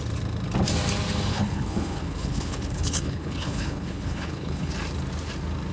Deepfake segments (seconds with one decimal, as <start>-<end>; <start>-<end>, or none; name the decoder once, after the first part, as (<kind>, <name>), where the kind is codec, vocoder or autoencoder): 1.3-4.7 (codec, HILCodec)